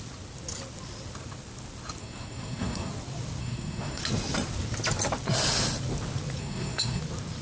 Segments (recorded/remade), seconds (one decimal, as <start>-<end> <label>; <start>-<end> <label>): 0.0-2.0 recorded; 2.0-2.9 remade; 2.9-3.4 recorded; 3.4-4.0 remade; 4.0-6.4 recorded; 6.4-7.0 remade; 7.0-7.4 recorded